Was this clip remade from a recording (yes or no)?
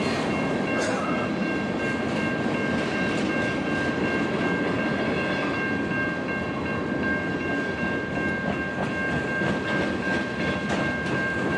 no